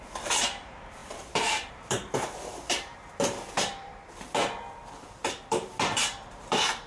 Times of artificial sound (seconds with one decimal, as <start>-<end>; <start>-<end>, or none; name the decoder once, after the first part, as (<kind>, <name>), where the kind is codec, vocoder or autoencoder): 0.0-6.9 (vocoder, BigVGAN v2)